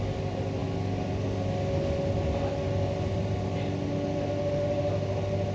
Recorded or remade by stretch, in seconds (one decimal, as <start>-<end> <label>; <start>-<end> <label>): 0.0-5.5 recorded